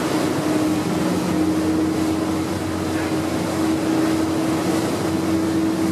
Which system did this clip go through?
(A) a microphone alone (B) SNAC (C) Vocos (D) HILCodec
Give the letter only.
A